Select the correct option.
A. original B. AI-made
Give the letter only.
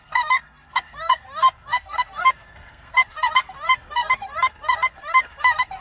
B